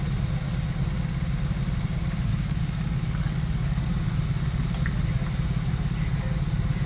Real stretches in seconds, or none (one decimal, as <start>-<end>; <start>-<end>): 0.0-2.3; 3.9-6.9